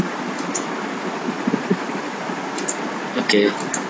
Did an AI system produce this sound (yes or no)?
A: no